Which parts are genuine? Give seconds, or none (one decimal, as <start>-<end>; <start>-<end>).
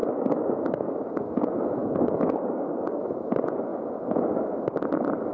0.9-1.8; 3.0-5.3